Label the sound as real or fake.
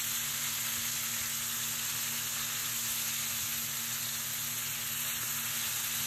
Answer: real